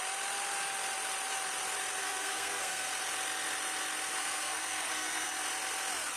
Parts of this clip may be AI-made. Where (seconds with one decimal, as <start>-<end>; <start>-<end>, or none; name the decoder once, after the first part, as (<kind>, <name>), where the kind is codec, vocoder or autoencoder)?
2.0-2.9 (codec, SNAC); 4.2-5.3